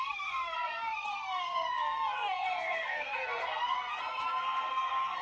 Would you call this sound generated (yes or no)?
yes